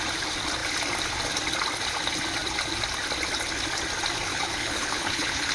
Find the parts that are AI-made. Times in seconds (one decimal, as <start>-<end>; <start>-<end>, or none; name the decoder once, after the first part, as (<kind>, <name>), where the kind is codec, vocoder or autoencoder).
4.3-5.5 (codec, HILCodec)